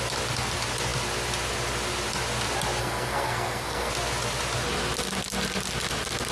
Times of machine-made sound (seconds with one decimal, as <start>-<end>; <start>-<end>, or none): 2.8-3.9